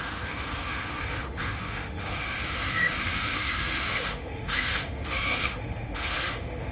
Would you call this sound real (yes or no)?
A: no